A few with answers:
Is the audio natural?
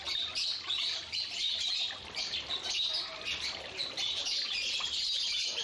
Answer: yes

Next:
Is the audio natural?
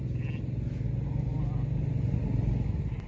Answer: yes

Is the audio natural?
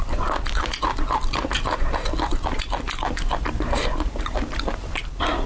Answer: yes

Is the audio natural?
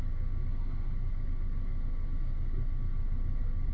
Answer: yes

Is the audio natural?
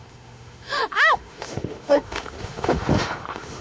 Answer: no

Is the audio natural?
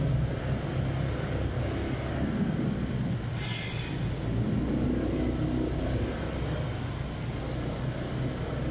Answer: yes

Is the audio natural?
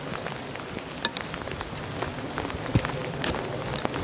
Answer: yes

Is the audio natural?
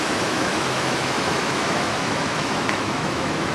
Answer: no